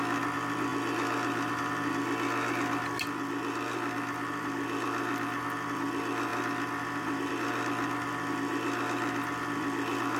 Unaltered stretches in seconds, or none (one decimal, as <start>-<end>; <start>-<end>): 0.0-10.2